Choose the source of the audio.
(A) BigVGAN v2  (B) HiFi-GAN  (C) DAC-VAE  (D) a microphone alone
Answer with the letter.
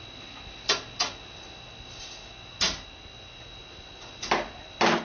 D